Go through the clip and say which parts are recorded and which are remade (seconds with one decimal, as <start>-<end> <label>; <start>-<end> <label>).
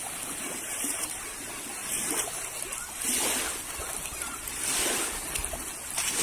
0.0-5.4 remade; 5.4-6.2 recorded